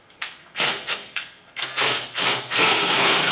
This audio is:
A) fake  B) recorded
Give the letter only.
A